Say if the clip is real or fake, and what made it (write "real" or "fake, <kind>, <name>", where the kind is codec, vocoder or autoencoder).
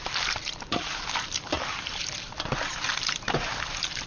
fake, vocoder, BigVGAN v2